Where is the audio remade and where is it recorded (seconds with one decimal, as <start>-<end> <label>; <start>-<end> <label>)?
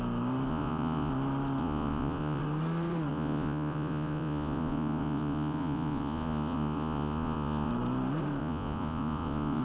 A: 0.0-0.5 recorded; 0.5-1.1 remade; 1.1-1.6 recorded; 1.6-2.4 remade; 2.4-3.1 recorded; 3.1-7.7 remade; 7.7-8.4 recorded; 8.4-9.6 remade